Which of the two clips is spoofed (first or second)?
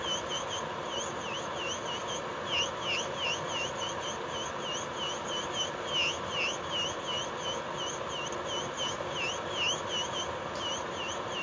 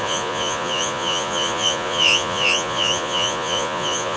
second